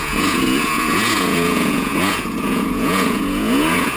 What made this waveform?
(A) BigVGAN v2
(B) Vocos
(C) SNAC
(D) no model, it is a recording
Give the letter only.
B